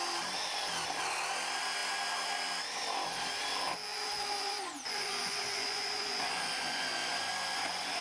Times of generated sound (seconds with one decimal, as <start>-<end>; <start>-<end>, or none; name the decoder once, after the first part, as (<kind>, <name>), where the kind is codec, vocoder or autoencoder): 3.9-8.0 (vocoder, Vocos)